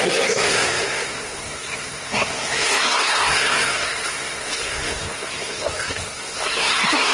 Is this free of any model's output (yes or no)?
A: no